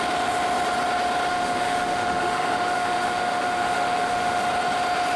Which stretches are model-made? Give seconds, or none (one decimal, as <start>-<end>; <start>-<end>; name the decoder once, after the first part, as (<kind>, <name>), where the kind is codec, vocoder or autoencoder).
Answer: 1.3-4.4 (autoencoder, DAC-VAE)